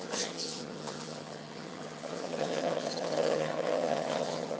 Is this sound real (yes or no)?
no